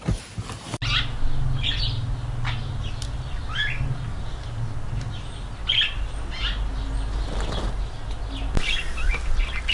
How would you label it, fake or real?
real